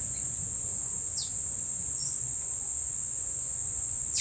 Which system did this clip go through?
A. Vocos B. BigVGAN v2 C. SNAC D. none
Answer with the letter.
A